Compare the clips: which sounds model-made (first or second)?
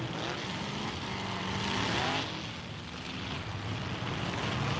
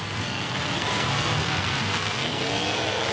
second